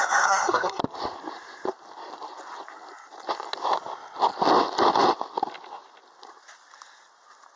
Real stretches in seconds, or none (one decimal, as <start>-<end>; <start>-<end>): 0.8-7.6